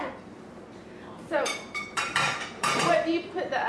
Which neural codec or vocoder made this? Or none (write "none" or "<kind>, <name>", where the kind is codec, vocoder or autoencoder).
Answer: vocoder, BigVGAN v2